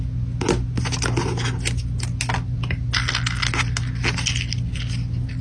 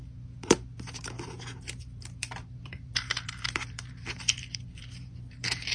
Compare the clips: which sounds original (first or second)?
first